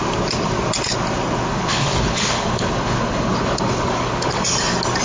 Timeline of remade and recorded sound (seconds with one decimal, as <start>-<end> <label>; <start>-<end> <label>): 0.0-1.5 recorded; 1.5-4.5 remade; 4.5-5.0 recorded